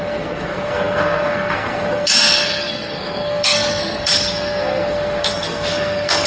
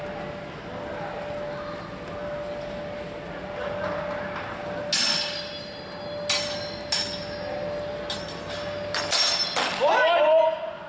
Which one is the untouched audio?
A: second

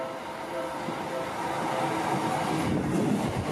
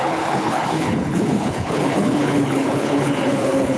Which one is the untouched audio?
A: first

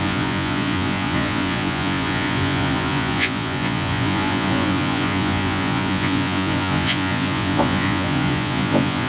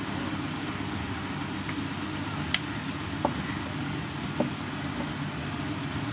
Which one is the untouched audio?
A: second